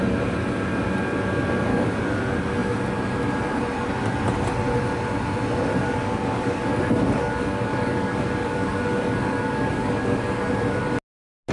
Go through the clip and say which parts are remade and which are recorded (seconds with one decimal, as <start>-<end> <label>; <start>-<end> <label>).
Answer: 0.0-1.7 recorded; 1.7-2.2 remade; 2.2-5.7 recorded; 5.7-6.7 remade; 6.7-7.2 recorded; 7.2-10.2 remade; 10.2-11.5 recorded

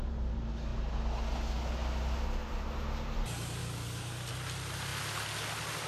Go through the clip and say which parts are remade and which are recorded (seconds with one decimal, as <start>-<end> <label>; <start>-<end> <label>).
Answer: 0.0-3.6 recorded; 3.6-4.3 remade; 4.3-5.9 recorded

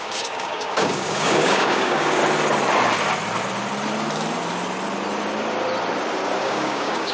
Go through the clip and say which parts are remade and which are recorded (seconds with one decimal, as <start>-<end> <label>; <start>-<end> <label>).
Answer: 0.0-2.2 remade; 2.2-6.4 recorded; 6.4-7.1 remade

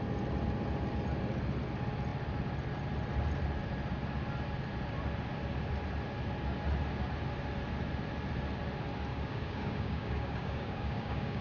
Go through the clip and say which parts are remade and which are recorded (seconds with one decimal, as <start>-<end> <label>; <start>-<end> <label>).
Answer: 0.0-9.1 recorded; 9.1-11.4 remade

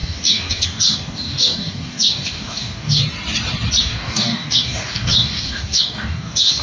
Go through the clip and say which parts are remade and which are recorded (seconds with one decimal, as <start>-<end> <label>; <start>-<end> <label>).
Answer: 0.0-3.0 remade; 3.0-3.8 recorded; 3.8-6.6 remade